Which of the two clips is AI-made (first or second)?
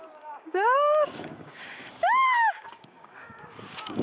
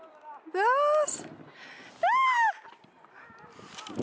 first